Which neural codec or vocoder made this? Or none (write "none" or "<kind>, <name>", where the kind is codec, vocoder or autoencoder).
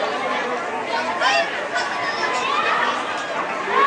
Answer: none